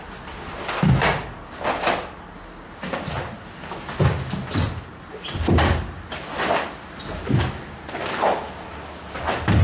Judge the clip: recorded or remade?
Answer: recorded